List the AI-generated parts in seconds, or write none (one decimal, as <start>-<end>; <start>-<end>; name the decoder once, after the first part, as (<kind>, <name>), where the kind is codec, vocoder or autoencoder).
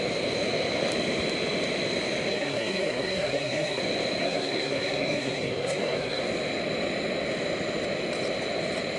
2.3-3.8 (codec, SNAC); 4.2-6.2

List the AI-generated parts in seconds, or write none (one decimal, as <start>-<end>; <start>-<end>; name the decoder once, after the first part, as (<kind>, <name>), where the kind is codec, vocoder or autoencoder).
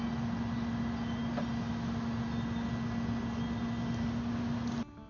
none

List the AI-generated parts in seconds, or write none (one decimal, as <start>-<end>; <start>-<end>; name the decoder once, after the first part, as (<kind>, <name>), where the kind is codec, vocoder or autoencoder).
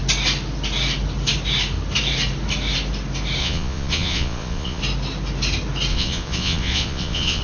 3.4-4.8 (vocoder, Vocos); 5.9-7.4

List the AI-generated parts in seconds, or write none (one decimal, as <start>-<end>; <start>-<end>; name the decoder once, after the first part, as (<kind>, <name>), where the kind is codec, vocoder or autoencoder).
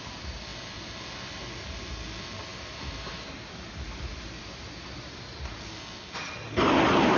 2.5-4.4 (vocoder, BigVGAN v2)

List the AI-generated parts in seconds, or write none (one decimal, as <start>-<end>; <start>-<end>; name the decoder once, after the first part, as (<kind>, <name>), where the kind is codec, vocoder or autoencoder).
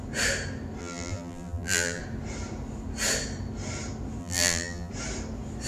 0.8-2.0 (vocoder, BigVGAN v2); 4.2-4.9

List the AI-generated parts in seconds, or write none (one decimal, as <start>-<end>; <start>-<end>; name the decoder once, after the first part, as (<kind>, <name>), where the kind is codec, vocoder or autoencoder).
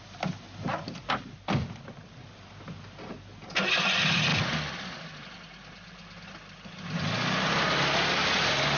none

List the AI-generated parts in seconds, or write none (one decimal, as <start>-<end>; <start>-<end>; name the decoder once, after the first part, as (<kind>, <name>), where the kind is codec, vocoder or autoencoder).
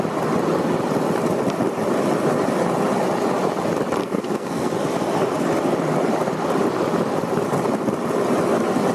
4.0-4.7 (codec, SNAC)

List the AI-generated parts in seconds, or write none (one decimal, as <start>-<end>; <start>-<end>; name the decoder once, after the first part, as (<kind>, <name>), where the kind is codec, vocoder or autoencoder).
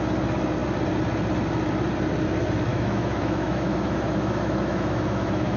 2.7-5.6 (autoencoder, DAC-VAE)